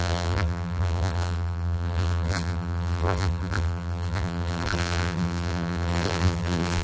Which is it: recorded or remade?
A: remade